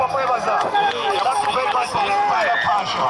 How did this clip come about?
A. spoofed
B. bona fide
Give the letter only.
B